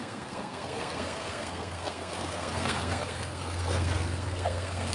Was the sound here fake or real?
fake